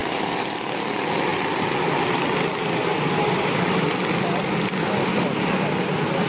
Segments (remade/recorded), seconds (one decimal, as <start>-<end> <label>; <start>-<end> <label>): 0.0-6.3 recorded